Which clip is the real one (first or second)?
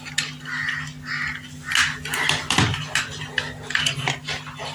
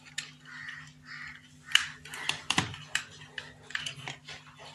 first